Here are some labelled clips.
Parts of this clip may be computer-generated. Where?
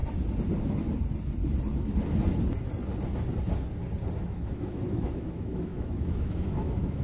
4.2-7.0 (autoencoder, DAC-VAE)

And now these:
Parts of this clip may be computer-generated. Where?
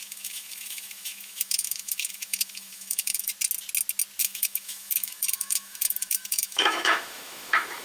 0.0-3.3 (autoencoder, DAC-VAE); 4.2-7.8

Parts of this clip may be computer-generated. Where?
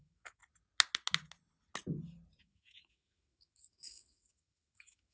0.0-0.4 (autoencoder, DAC-VAE); 2.4-5.1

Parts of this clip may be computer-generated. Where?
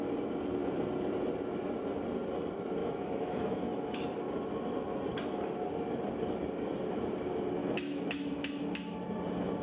2.8-4.0 (autoencoder, DAC-VAE); 7.6-8.5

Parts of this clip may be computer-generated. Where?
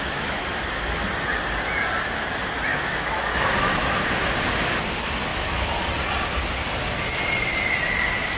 0.0-0.6 (autoencoder, DAC-VAE); 2.7-4.1; 5.3-5.8